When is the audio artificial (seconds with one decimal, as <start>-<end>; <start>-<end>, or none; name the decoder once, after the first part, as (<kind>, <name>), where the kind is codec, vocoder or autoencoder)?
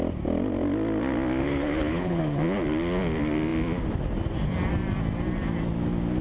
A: 1.4-2.2 (codec, HILCodec)